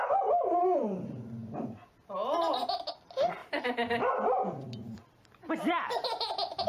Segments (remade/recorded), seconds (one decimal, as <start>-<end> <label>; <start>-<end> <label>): 0.0-1.4 recorded; 1.4-2.0 remade; 2.0-3.4 recorded; 3.4-5.5 remade; 5.5-6.7 recorded